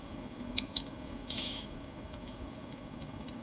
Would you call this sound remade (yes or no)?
yes